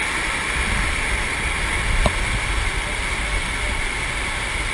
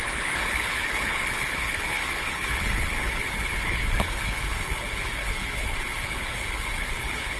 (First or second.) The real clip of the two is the first